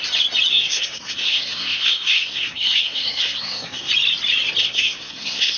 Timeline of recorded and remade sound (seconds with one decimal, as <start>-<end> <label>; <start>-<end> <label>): 0.0-0.5 recorded; 0.5-3.9 remade; 3.9-4.6 recorded; 4.6-5.6 remade